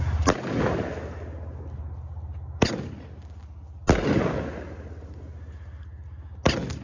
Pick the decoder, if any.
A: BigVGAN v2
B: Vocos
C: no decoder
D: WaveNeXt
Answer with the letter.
C